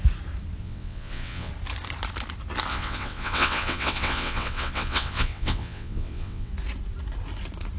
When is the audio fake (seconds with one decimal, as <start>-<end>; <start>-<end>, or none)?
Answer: 0.6-1.5; 2.7-6.5